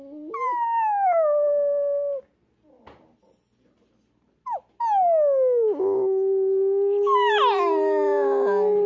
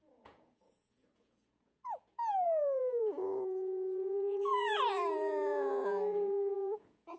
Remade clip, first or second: second